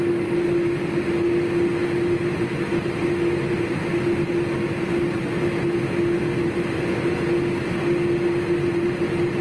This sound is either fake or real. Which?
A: real